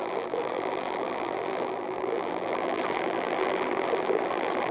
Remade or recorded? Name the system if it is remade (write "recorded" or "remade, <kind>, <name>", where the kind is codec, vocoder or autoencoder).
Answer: remade, vocoder, BigVGAN v2